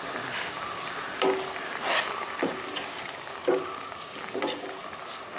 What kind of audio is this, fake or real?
real